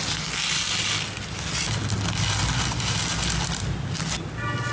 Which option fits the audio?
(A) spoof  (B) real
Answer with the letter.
B